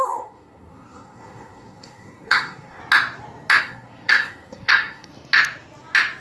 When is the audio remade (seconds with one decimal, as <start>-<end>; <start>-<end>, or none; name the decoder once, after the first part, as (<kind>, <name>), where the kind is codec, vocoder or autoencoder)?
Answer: 0.0-2.8 (codec, SNAC); 3.6-5.1